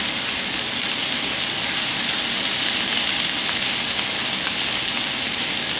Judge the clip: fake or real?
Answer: real